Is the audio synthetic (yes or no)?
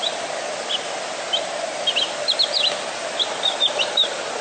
no